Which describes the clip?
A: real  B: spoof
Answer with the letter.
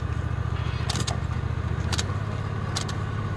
A